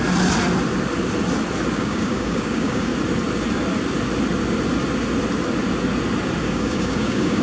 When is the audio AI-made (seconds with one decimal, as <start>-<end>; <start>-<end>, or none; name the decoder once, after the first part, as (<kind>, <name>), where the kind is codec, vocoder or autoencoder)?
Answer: 1.7-2.9 (codec, DAC); 6.4-7.4